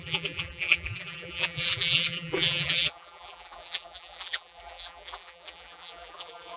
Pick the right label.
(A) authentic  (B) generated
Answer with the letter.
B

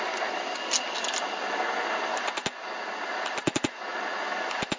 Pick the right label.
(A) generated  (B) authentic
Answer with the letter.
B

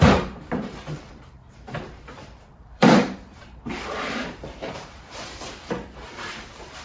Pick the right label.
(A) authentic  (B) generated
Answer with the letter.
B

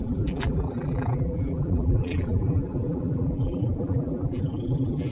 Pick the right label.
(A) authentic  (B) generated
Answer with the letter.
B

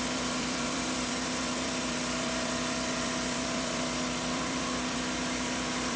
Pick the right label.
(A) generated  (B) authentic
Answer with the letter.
A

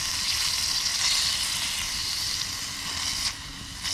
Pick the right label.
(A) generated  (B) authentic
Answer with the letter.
B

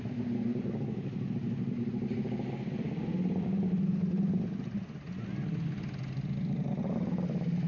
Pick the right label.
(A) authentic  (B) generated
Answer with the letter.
A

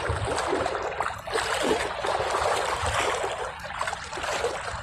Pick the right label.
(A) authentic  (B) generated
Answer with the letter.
A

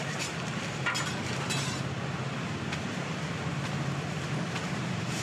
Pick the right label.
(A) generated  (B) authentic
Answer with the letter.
A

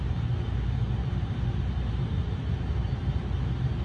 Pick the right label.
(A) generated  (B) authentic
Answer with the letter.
B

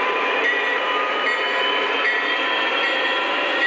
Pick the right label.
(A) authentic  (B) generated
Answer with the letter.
B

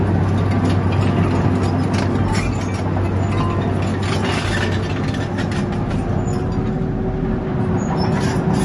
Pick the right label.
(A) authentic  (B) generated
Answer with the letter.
A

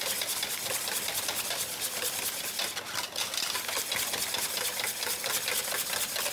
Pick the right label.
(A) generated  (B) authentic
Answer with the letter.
B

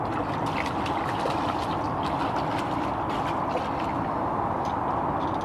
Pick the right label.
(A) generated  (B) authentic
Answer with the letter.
B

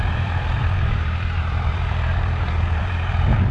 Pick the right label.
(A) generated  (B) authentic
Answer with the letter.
A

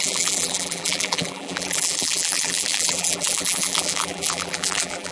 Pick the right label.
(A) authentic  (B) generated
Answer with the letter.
B